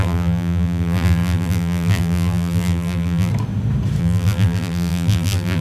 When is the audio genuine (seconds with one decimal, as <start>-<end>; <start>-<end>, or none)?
3.3-4.0